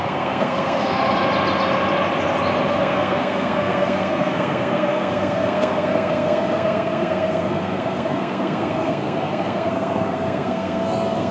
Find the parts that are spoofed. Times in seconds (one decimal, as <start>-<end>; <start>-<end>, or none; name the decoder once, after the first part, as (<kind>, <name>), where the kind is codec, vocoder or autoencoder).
0.0-1.0 (codec, SNAC); 2.7-11.3